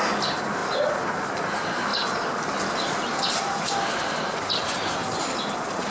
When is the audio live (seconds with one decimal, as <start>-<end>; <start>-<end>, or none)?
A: 0.0-5.9